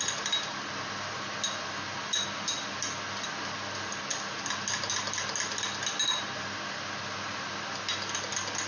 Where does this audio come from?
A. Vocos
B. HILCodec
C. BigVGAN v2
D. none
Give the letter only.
D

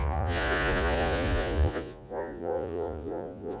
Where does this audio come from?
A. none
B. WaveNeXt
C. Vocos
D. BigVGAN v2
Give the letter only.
C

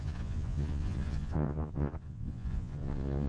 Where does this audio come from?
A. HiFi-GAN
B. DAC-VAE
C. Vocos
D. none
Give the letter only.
C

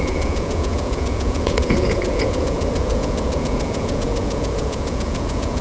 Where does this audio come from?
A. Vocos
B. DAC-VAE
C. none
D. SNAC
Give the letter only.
A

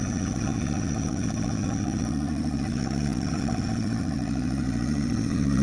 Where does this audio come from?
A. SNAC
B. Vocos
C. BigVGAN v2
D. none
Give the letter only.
B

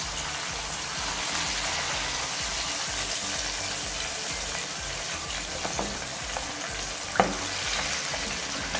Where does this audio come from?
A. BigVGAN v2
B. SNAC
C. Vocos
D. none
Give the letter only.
D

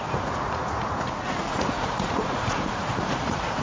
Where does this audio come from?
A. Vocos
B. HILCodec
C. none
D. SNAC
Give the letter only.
A